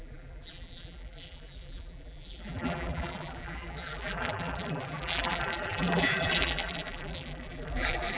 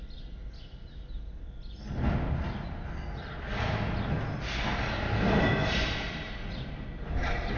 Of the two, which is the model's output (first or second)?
first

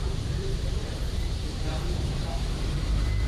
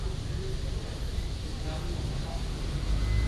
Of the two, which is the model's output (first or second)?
first